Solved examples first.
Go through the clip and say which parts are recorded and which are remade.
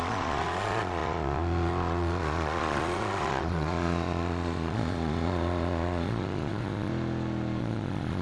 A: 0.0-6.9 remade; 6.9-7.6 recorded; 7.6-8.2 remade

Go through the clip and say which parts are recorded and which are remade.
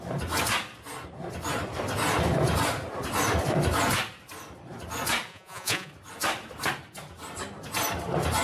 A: 0.0-5.3 recorded; 5.3-5.9 remade; 5.9-8.4 recorded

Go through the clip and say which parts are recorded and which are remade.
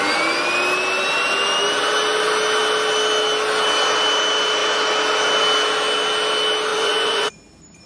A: 0.0-6.7 recorded; 6.7-7.3 remade; 7.3-7.9 recorded